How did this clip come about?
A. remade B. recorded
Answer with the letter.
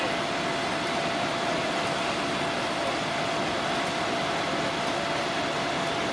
B